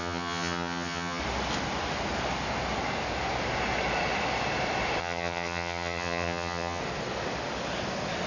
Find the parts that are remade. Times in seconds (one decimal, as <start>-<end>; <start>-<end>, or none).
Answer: 0.0-1.2; 5.0-6.8